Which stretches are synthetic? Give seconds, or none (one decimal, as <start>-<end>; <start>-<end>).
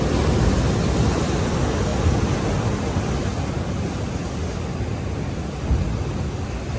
none